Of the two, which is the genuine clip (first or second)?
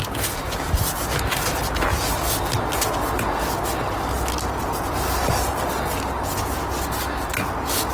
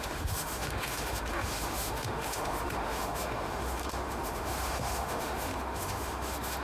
first